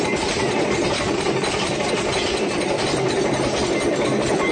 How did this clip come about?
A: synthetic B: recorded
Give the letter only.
B